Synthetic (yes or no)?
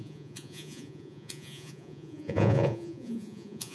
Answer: yes